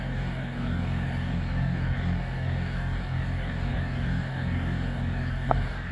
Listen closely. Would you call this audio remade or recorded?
remade